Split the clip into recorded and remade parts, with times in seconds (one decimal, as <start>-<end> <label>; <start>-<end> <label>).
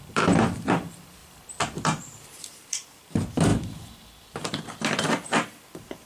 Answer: 0.0-1.2 recorded; 1.2-3.1 remade; 3.1-3.5 recorded; 3.5-6.1 remade